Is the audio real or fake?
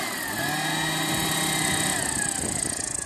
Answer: real